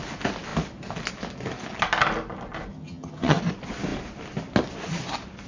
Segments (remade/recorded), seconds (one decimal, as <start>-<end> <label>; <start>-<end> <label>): 0.0-2.7 recorded; 2.7-3.4 remade; 3.4-5.5 recorded